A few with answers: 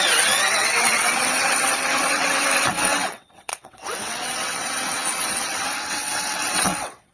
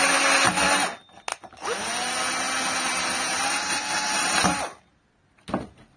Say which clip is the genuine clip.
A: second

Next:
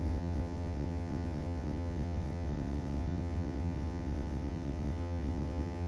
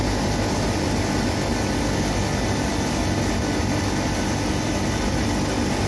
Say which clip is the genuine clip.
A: second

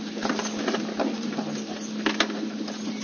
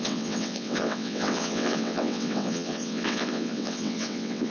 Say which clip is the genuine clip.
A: first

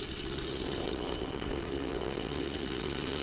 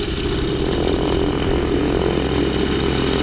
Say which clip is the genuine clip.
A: second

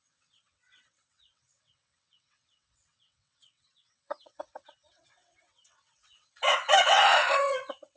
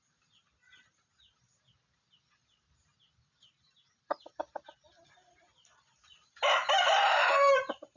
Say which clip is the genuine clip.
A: second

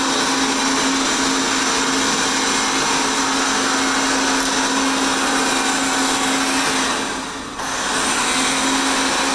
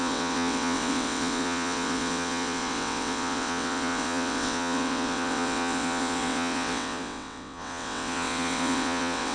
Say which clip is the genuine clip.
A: first